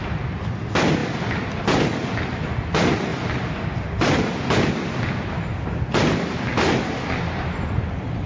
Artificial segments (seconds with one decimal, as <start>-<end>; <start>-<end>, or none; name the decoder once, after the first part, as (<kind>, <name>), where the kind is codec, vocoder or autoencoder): 1.0-2.1 (vocoder, BigVGAN v2); 3.1-4.3; 6.5-8.3